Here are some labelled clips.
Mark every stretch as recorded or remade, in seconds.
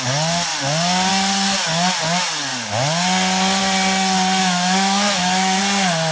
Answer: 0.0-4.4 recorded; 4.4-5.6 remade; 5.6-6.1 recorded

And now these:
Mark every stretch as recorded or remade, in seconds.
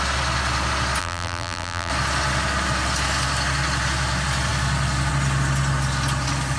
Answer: 0.0-1.0 recorded; 1.0-1.9 remade; 1.9-6.6 recorded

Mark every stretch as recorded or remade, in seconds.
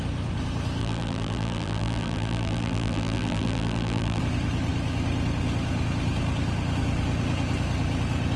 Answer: 0.0-0.8 recorded; 0.8-4.2 remade; 4.2-8.4 recorded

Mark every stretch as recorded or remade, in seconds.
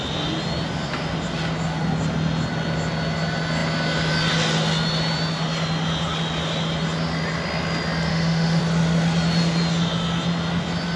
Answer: 0.0-8.1 recorded; 8.1-8.6 remade; 8.6-11.0 recorded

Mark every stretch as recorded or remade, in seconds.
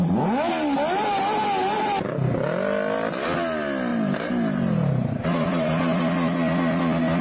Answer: 0.0-3.9 recorded; 3.9-6.0 remade; 6.0-7.2 recorded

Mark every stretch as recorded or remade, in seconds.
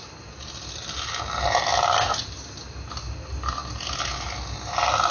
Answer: 0.0-5.1 recorded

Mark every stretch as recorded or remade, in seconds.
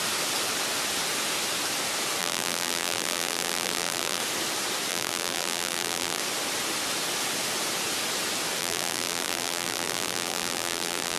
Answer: 0.0-2.2 recorded; 2.2-4.2 remade; 4.2-4.9 recorded; 4.9-6.2 remade; 6.2-8.6 recorded; 8.6-11.2 remade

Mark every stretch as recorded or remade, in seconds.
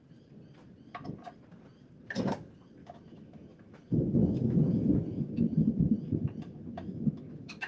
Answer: 0.0-2.8 recorded; 2.8-7.7 remade